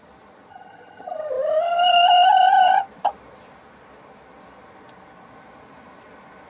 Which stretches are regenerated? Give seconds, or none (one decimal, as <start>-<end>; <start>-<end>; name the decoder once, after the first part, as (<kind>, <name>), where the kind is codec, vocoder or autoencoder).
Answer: 0.5-1.3 (vocoder, HiFi-GAN)